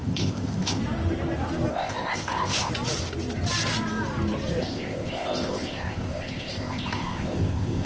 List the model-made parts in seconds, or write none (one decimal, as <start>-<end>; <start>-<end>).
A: 0.0-0.8; 1.7-2.7; 4.6-7.9